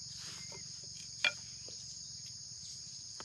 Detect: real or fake real